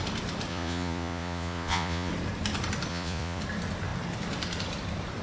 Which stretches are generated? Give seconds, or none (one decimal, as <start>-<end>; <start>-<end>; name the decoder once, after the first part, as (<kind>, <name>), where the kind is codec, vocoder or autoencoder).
0.5-2.1 (vocoder, Vocos); 2.9-3.4